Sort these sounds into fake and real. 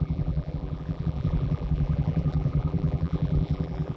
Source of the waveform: fake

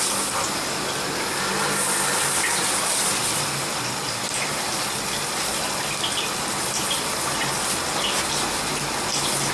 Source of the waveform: real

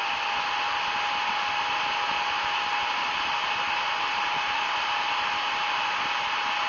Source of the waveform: real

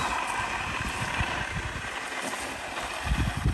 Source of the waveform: real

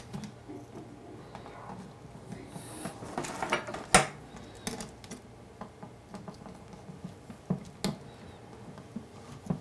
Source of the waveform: real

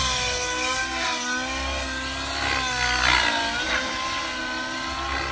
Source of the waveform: real